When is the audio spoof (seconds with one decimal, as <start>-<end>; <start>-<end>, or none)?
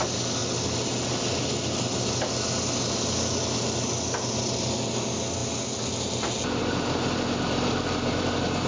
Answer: none